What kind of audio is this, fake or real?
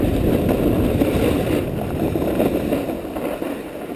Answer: real